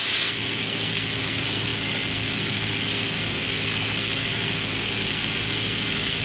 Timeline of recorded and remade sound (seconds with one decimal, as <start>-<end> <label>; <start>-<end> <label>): 0.0-6.2 remade